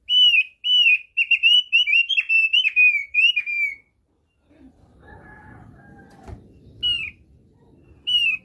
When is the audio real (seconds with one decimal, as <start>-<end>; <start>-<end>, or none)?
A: 0.0-0.9; 3.4-7.8